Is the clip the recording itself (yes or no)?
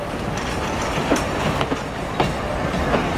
yes